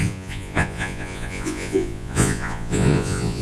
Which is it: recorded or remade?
remade